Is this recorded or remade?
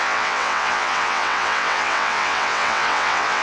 remade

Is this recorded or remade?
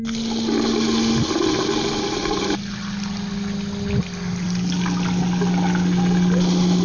recorded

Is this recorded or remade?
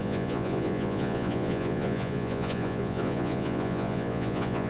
remade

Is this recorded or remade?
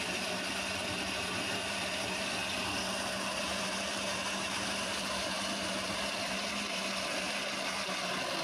remade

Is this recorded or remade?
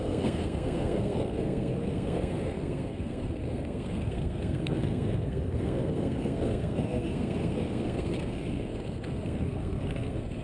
remade